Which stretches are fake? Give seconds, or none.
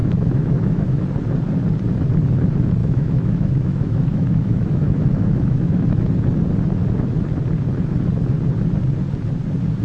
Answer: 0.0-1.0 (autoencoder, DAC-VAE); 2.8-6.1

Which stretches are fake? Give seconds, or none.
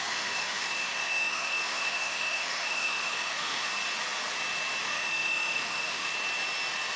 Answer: 0.0-3.7 (autoencoder, DAC-VAE); 4.8-6.1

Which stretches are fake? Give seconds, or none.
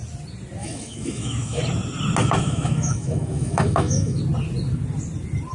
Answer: 0.6-1.6 (autoencoder, DAC-VAE); 2.2-4.2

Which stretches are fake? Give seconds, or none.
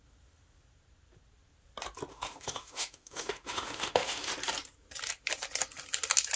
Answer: 2.1-4.3 (autoencoder, DAC-VAE)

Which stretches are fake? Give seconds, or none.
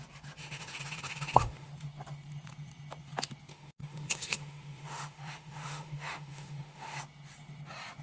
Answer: 0.4-1.7 (autoencoder, DAC-VAE); 3.5-7.0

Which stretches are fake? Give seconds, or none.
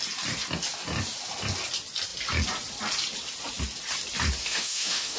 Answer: 4.4-5.2 (autoencoder, DAC-VAE)